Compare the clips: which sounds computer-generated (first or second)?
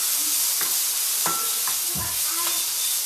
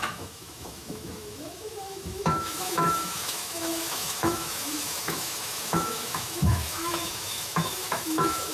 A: second